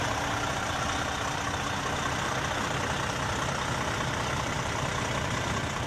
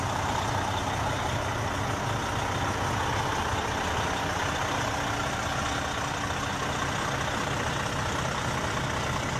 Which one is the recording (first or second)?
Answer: second